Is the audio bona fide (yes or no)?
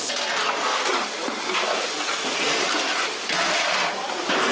no